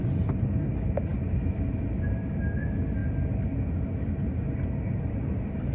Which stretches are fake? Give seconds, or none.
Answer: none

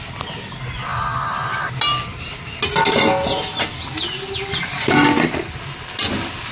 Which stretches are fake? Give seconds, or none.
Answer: none

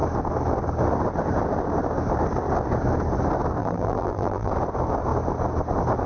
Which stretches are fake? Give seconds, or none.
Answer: 3.6-4.5 (vocoder, BigVGAN v2)

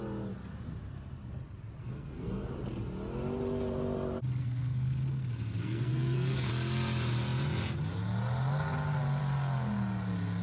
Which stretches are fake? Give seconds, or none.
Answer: 1.8-2.5 (codec, SNAC); 4.4-6.5

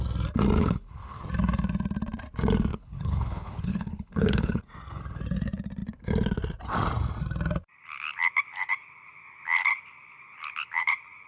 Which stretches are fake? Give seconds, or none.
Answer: 0.6-1.2 (codec, HILCodec); 2.7-4.6